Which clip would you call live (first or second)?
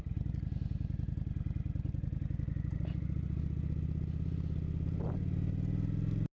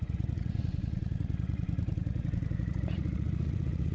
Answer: first